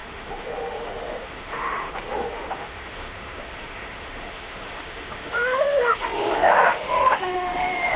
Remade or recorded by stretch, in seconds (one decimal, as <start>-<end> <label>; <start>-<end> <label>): 0.0-8.0 remade